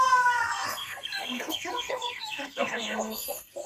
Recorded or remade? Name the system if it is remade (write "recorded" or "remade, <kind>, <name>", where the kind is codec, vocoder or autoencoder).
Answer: remade, codec, SNAC